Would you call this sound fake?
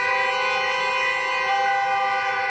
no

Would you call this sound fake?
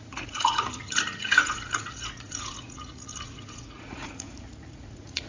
yes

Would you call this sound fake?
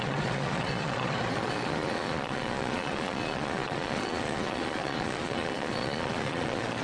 yes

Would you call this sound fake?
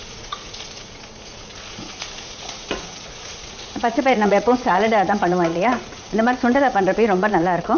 yes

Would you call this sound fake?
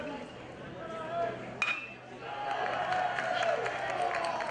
no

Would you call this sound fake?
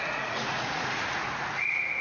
yes